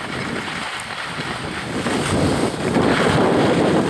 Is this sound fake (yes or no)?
no